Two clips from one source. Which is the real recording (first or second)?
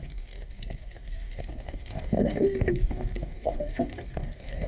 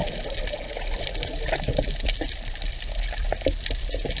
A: second